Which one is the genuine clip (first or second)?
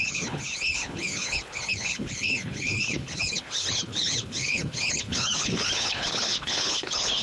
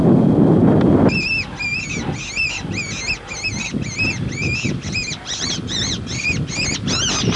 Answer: second